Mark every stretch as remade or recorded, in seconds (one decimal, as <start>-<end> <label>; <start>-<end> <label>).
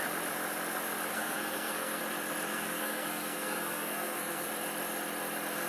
0.0-1.1 recorded; 1.1-2.0 remade; 2.0-2.5 recorded; 2.5-4.5 remade; 4.5-5.7 recorded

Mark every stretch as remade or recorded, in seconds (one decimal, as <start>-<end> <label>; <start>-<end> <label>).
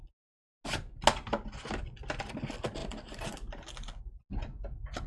0.0-5.1 recorded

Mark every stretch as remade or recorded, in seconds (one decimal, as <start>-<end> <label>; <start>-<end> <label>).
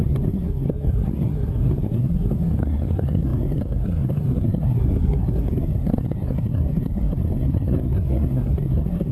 0.0-9.1 remade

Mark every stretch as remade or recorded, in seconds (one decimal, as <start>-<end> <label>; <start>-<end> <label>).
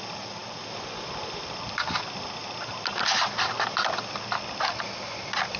0.0-5.6 recorded